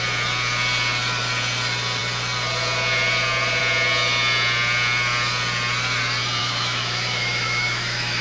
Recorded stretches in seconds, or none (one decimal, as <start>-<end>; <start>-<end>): 0.0-6.4